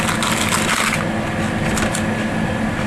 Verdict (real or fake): real